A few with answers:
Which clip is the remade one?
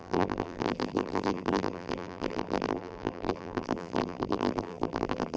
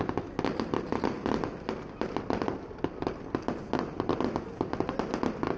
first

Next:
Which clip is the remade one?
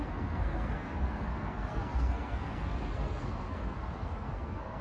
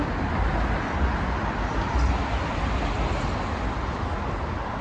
first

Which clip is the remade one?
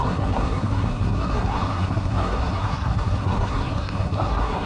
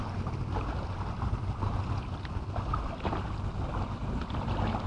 first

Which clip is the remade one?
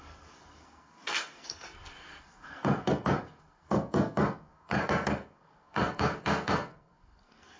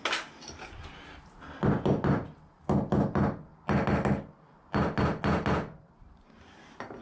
first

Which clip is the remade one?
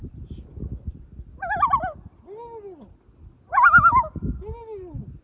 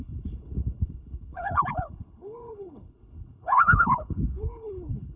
second